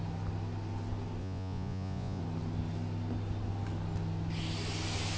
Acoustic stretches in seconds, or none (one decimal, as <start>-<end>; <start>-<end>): 0.0-1.2; 2.2-5.2